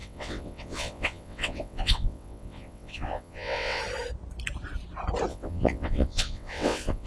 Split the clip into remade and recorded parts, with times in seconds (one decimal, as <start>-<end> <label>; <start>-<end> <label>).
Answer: 0.0-3.8 remade; 3.8-5.3 recorded; 5.3-7.1 remade